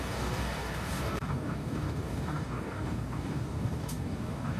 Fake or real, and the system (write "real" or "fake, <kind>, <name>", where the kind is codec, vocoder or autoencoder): fake, codec, DAC